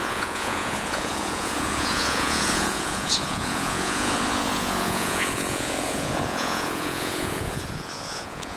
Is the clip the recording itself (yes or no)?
no